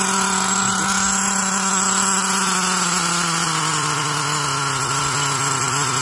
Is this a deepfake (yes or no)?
no